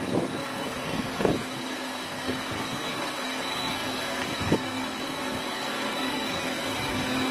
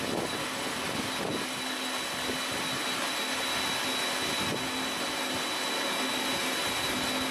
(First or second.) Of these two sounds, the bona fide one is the second